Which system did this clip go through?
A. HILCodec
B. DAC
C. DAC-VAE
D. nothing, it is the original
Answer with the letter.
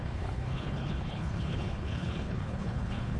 A